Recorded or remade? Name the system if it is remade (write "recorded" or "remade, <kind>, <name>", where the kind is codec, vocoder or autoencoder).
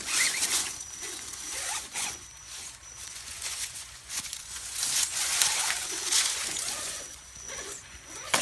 remade, vocoder, Vocos